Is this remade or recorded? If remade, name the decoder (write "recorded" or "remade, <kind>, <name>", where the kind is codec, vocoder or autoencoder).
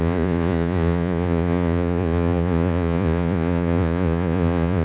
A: remade, vocoder, Vocos